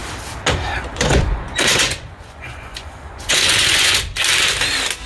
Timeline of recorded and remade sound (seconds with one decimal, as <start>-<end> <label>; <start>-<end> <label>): 0.0-0.9 recorded; 0.9-4.0 remade; 4.0-5.1 recorded